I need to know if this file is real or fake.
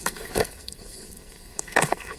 fake